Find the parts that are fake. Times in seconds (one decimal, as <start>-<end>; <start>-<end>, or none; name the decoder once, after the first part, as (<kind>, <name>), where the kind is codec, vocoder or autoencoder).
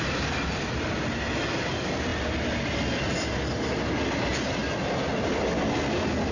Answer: none